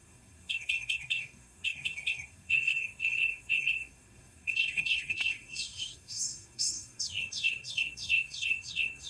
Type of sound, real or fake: fake